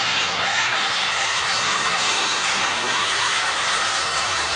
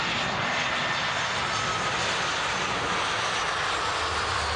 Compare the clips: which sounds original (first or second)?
second